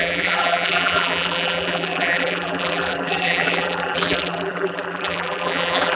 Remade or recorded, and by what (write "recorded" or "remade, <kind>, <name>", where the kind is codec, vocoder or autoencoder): remade, vocoder, BigVGAN v2